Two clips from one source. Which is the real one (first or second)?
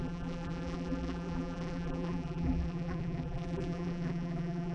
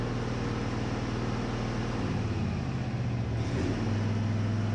second